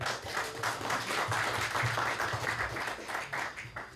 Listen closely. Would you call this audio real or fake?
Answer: real